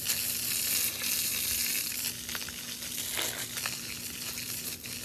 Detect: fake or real real